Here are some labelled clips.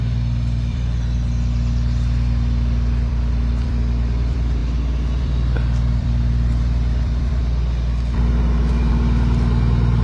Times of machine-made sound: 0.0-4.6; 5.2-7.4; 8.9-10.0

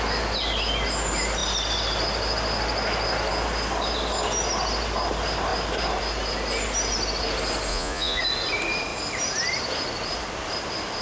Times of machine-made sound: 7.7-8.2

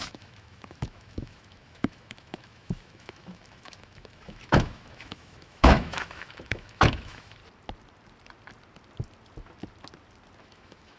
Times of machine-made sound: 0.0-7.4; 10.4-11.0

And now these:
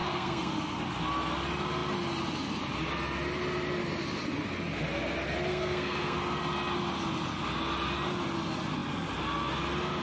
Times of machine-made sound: 0.0-0.8; 5.5-6.2